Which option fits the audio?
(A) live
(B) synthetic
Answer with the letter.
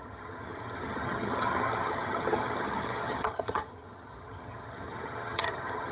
B